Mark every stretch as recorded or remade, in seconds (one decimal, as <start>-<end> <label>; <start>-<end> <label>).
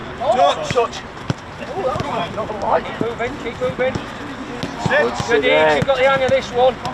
0.0-2.5 remade; 2.5-6.9 recorded